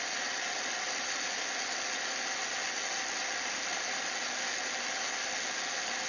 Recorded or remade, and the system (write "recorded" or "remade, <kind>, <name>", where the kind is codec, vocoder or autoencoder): recorded